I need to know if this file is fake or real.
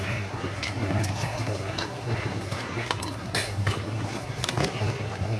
fake